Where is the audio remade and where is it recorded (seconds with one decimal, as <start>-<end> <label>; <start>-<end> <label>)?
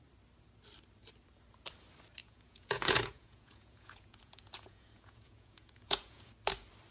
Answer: 0.0-2.2 recorded; 2.2-6.3 remade; 6.3-6.9 recorded